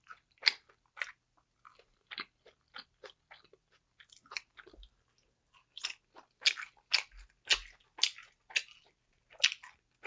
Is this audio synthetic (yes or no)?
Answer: no